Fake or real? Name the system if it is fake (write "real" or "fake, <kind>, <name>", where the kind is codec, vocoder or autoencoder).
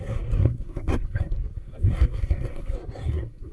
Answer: fake, codec, SNAC